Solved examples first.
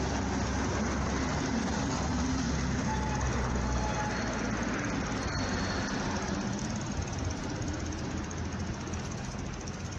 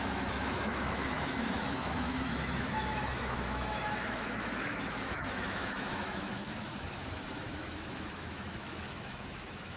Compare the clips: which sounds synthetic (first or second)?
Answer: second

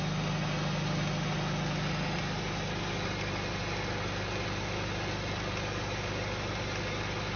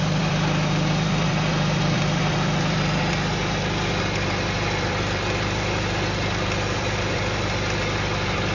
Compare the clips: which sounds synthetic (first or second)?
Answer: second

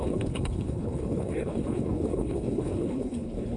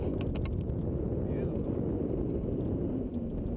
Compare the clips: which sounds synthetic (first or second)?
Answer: first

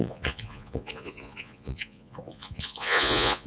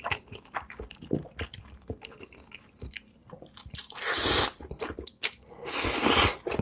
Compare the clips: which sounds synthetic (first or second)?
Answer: first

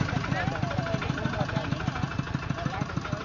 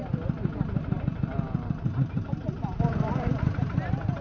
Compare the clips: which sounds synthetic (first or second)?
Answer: second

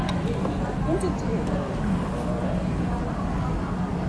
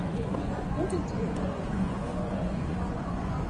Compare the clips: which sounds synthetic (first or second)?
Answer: second